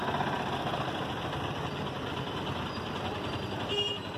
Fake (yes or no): no